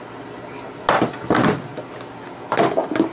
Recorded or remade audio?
recorded